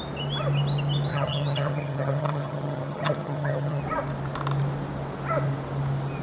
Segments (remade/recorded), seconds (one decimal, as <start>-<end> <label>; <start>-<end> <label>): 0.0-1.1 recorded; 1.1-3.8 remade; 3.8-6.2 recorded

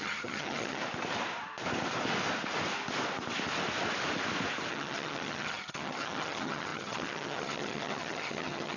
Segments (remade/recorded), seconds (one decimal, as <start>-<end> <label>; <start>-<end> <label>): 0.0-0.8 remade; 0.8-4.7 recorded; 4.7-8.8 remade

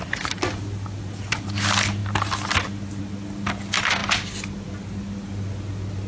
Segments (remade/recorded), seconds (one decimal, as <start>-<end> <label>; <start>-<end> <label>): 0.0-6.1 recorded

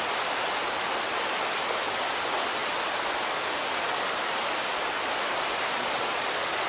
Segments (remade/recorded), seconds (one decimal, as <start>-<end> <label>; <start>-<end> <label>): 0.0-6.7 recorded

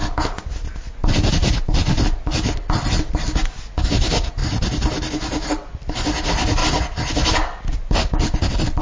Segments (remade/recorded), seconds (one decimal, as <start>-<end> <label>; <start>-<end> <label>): 0.0-8.8 recorded

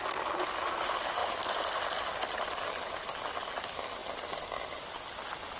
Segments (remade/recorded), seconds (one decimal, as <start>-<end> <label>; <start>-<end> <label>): 0.0-5.6 recorded

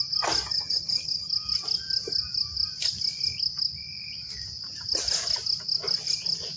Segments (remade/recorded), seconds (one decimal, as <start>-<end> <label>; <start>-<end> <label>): 0.0-0.5 recorded; 0.5-1.3 remade; 1.3-6.6 recorded

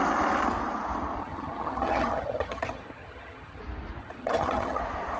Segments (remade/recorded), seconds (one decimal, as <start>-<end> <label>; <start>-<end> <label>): 0.0-1.2 recorded; 1.2-3.6 remade; 3.6-4.0 recorded; 4.0-4.8 remade; 4.8-5.2 recorded